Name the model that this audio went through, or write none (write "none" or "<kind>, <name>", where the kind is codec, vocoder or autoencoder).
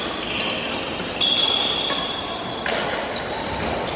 none